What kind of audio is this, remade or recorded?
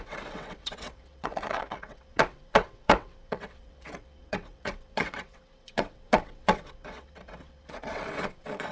remade